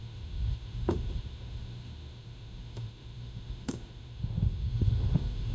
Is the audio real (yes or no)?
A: no